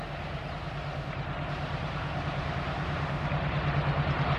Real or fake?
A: real